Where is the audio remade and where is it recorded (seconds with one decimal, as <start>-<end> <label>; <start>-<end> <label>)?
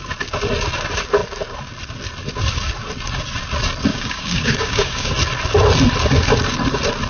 0.0-3.9 recorded; 3.9-5.1 remade; 5.1-7.1 recorded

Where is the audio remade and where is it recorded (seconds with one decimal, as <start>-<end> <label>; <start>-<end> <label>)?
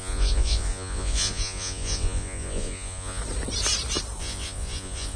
0.0-3.2 remade; 3.2-4.2 recorded; 4.2-5.2 remade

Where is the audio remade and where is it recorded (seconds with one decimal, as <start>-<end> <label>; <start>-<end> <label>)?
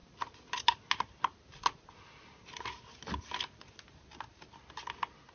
0.0-5.3 recorded